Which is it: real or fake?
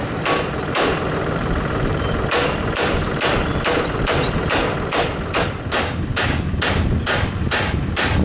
fake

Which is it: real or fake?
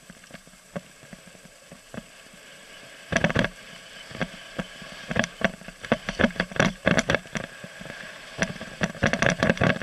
fake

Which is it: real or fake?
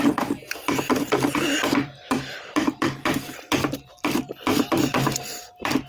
fake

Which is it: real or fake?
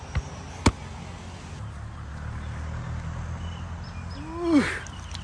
real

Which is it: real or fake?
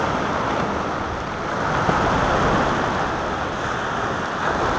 real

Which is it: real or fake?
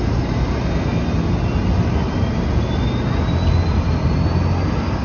real